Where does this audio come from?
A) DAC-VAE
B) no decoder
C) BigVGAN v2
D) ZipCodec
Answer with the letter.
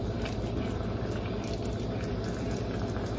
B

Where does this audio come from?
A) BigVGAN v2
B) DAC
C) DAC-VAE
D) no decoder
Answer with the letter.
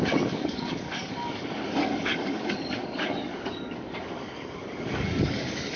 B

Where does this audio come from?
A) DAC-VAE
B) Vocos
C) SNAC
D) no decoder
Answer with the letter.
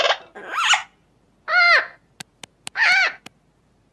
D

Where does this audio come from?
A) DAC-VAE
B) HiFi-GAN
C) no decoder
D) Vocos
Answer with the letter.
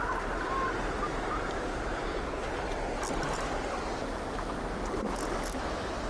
C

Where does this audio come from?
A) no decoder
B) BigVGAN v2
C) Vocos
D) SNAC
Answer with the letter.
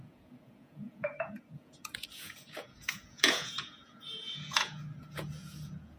C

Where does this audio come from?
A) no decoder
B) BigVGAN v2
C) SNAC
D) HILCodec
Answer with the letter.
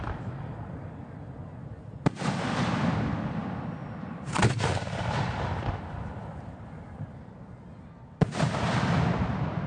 A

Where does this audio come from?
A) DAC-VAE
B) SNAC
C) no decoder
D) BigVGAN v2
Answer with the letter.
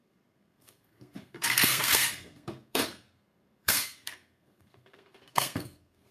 B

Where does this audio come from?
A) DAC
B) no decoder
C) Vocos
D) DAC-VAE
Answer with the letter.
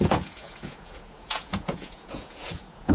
C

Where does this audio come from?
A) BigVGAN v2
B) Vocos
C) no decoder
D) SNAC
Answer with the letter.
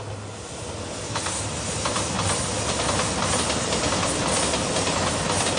C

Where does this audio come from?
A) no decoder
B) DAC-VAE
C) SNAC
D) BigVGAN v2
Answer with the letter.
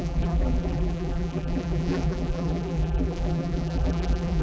D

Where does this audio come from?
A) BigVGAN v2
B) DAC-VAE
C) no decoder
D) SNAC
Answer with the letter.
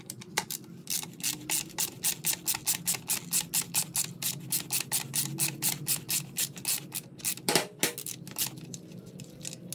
C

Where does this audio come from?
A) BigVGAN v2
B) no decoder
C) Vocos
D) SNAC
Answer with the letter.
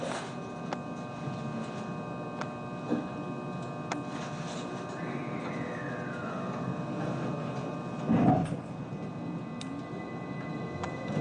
B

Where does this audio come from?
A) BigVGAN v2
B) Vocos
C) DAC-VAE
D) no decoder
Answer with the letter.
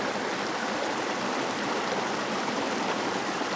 A